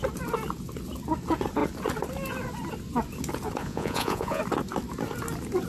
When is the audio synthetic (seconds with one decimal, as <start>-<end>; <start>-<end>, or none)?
3.6-4.4